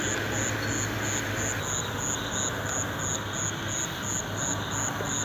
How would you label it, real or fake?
real